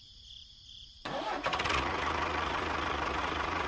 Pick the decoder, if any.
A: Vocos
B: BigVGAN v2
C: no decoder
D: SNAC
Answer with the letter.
A